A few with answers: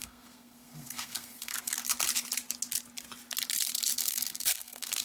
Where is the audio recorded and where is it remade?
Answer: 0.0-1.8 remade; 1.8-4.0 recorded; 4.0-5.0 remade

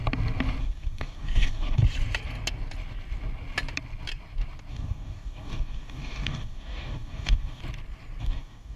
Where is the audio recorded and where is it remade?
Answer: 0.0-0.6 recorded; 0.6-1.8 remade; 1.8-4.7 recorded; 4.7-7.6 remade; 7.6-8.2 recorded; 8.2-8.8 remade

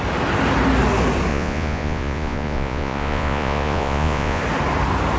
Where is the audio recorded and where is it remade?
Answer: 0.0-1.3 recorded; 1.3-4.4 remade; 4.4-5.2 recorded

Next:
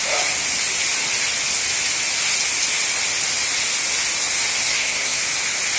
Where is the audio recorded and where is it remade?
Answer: 0.0-4.7 recorded; 4.7-5.2 remade; 5.2-5.8 recorded

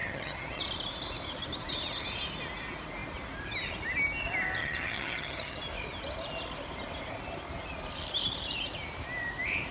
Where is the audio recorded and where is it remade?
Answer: 0.0-0.6 remade; 0.6-4.6 recorded; 4.6-5.6 remade; 5.6-9.7 recorded